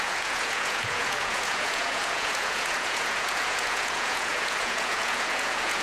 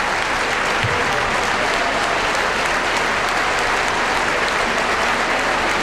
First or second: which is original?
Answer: second